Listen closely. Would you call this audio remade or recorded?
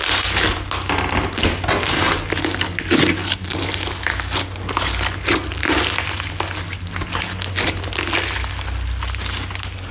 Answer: recorded